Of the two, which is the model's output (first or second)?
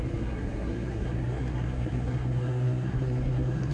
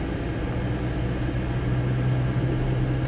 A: first